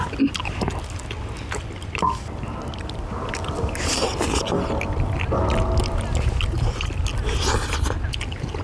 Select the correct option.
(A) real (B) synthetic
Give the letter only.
A